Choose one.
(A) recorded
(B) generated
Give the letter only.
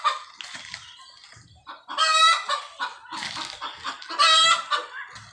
A